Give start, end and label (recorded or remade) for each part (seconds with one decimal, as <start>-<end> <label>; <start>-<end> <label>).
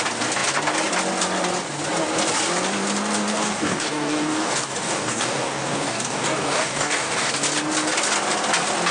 0.0-3.3 recorded; 3.3-7.3 remade; 7.3-8.9 recorded